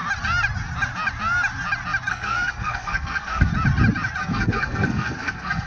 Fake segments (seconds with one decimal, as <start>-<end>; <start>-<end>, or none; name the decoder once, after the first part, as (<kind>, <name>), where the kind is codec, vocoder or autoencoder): 2.1-3.5 (codec, SNAC); 4.2-5.7